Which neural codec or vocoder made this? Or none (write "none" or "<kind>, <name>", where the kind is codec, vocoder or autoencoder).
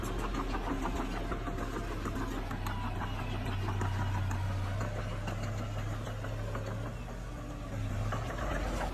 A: none